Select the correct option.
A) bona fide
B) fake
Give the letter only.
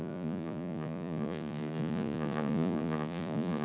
B